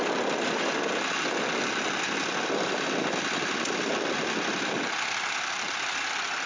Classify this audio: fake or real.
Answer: real